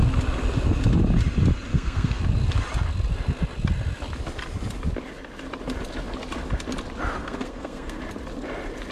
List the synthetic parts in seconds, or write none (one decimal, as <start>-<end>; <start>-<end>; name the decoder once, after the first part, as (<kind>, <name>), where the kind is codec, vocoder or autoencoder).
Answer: 1.7-2.2 (codec, SNAC); 7.2-8.0